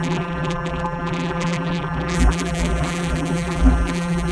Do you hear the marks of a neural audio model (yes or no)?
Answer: yes